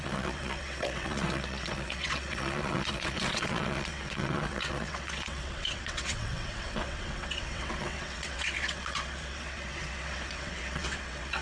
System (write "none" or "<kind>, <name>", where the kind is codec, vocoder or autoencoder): vocoder, WaveNeXt